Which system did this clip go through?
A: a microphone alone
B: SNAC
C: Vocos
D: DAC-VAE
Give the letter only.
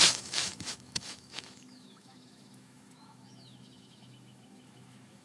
D